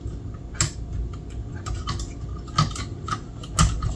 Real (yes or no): yes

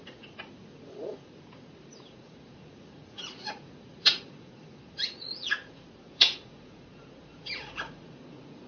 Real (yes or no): no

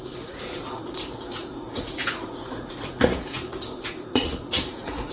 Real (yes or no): no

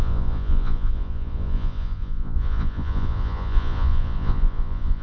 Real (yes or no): no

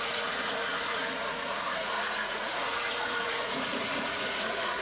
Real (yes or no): no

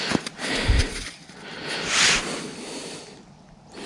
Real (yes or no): yes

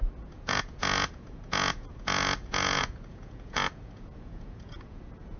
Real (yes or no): no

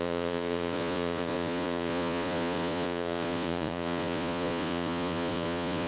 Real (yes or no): no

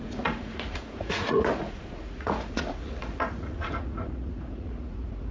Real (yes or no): no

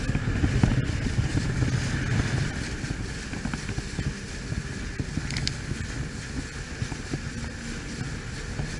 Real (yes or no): yes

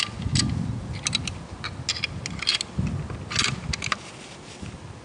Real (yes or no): yes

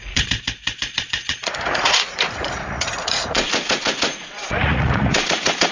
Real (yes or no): no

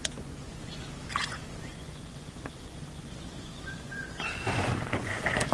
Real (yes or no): no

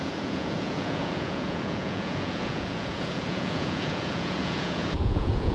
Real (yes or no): no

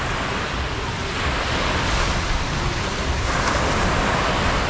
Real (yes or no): yes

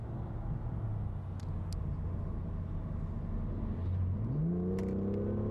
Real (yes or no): yes